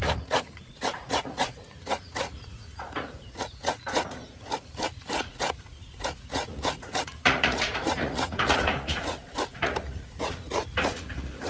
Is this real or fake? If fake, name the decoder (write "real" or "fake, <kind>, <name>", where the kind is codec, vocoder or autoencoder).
fake, vocoder, Vocos